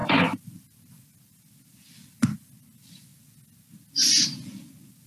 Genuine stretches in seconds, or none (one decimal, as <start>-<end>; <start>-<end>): 1.0-5.1